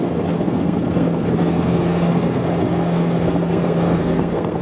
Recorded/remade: remade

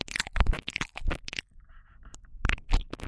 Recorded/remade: recorded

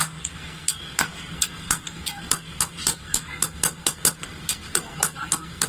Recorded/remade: remade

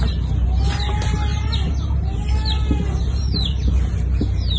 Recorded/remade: recorded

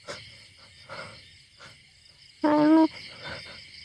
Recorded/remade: recorded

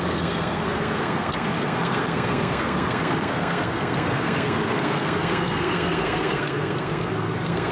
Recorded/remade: remade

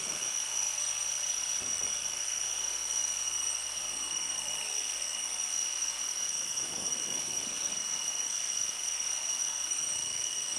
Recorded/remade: remade